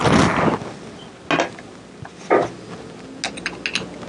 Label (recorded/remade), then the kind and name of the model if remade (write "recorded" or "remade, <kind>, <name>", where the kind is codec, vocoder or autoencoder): recorded